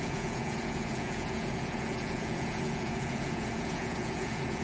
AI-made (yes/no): yes